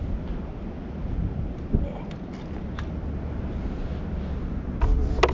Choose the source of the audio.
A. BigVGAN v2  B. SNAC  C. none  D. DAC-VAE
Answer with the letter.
C